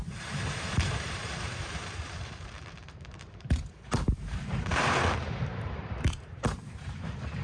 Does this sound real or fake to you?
fake